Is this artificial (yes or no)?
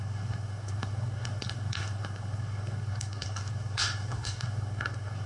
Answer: yes